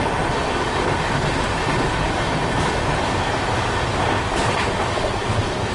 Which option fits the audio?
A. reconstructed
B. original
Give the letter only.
B